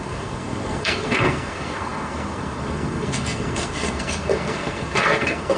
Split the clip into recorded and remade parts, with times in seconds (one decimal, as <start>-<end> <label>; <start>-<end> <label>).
0.0-5.6 remade